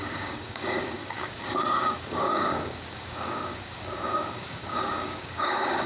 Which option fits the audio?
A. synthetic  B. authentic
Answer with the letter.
A